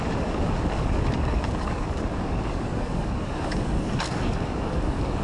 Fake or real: fake